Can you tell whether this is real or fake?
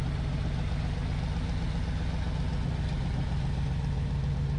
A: real